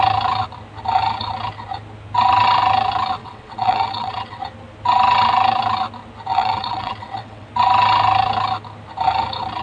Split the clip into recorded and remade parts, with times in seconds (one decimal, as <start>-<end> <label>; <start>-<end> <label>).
0.0-3.2 recorded; 3.2-4.4 remade; 4.4-6.3 recorded; 6.3-7.5 remade; 7.5-9.6 recorded